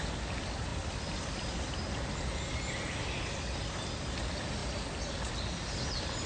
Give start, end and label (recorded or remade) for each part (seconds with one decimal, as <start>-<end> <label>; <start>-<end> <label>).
0.0-4.6 recorded; 4.6-5.3 remade; 5.3-6.3 recorded